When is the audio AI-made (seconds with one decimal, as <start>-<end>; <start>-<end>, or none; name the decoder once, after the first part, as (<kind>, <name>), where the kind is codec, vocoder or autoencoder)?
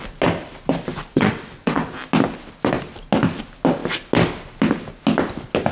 1.1-1.9 (vocoder, WaveNeXt)